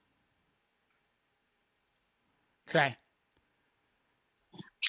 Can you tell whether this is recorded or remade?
recorded